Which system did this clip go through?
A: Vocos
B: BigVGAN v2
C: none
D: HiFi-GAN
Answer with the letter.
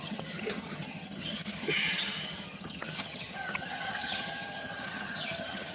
D